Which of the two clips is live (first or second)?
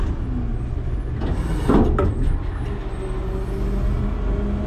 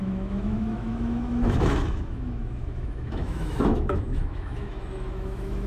first